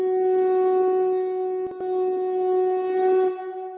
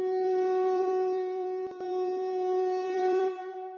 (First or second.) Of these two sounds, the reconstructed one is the second